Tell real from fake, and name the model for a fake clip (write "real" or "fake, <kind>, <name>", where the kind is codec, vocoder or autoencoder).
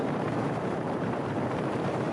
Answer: fake, vocoder, BigVGAN v2